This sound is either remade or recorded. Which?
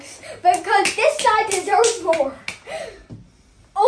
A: recorded